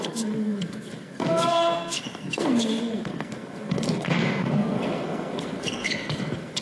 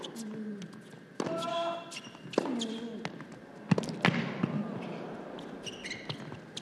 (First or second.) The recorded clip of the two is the second